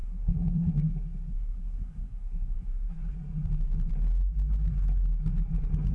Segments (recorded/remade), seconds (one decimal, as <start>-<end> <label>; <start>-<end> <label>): 0.0-0.7 remade; 0.7-1.3 recorded; 1.3-3.0 remade; 3.0-5.9 recorded